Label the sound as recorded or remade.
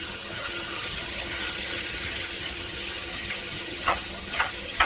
remade